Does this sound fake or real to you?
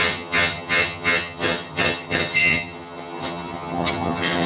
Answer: fake